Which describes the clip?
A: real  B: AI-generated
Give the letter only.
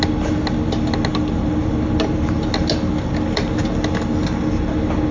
A